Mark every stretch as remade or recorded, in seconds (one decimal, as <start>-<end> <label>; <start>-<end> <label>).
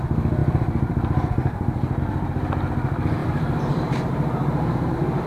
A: 0.0-5.3 remade